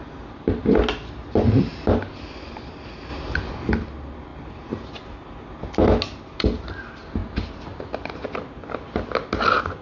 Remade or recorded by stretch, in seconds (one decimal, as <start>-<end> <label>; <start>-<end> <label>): 0.0-9.8 recorded